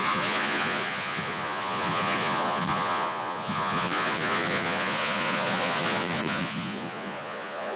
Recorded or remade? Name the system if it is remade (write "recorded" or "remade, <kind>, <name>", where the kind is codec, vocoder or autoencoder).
remade, vocoder, Vocos